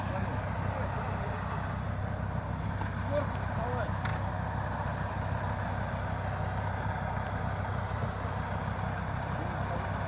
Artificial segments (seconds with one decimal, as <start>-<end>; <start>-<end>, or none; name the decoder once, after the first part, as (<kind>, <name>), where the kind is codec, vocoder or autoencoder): none